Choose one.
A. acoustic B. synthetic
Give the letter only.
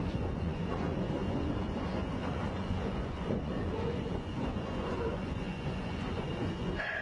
B